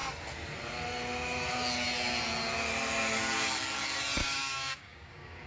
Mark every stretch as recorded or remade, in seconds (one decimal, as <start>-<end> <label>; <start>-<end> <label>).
0.0-4.2 recorded; 4.2-5.5 remade